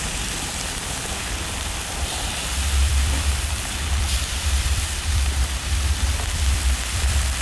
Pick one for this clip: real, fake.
fake